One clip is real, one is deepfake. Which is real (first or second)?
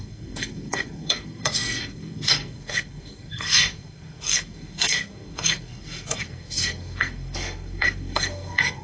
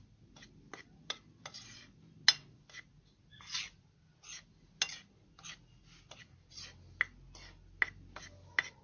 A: second